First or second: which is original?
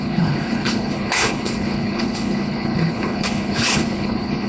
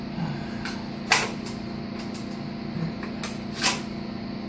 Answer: second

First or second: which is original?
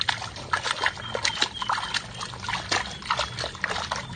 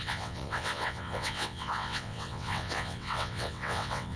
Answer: first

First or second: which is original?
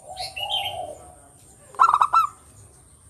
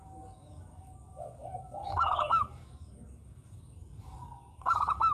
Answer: first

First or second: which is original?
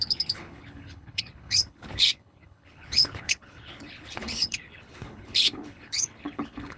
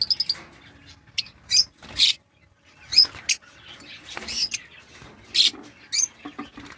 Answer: second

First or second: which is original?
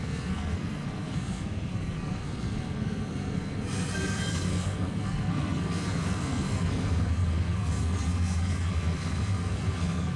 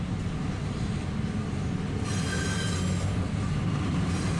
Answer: second